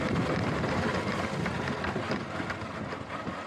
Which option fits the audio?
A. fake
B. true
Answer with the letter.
B